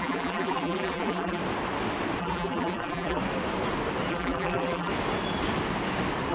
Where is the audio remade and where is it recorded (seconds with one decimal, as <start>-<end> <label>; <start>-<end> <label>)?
0.0-1.4 remade; 1.4-2.2 recorded; 2.2-3.2 remade; 3.2-4.1 recorded; 4.1-4.9 remade; 4.9-6.3 recorded